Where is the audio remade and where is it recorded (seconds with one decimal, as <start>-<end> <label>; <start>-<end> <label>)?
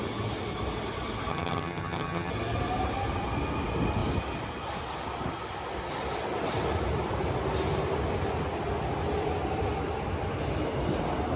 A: 0.0-1.3 recorded; 1.3-2.3 remade; 2.3-11.4 recorded